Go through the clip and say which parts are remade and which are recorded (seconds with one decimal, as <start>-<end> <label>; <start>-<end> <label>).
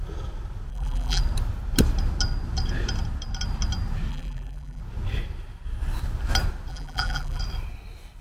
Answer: 0.0-0.7 recorded; 0.7-1.2 remade; 1.2-4.1 recorded; 4.1-4.8 remade; 4.8-6.7 recorded; 6.7-7.4 remade; 7.4-8.2 recorded